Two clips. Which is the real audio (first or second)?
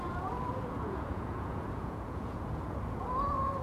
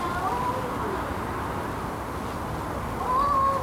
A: second